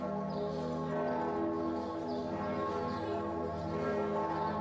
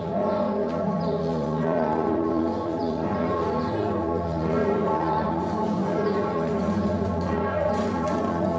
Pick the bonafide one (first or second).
first